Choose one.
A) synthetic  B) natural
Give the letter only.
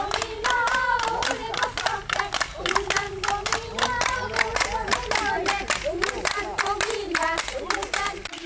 B